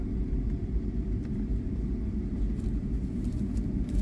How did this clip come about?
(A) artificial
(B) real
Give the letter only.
A